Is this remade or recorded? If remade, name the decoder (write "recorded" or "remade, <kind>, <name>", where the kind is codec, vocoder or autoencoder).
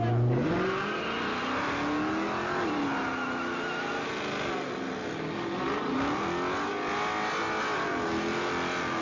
recorded